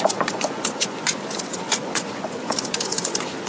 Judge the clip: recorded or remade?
remade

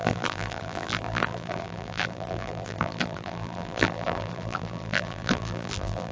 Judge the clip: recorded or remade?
remade